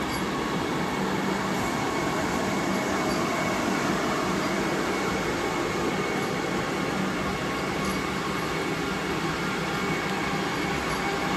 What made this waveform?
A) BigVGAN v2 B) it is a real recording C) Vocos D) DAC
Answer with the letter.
B